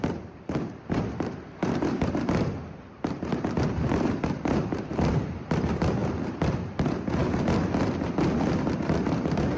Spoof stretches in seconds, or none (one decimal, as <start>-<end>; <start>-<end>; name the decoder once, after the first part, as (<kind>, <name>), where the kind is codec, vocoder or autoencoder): 0.0-3.3 (vocoder, BigVGAN v2); 3.9-6.0; 6.6-7.2; 8.8-9.6